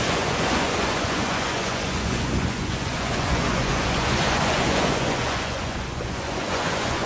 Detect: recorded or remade remade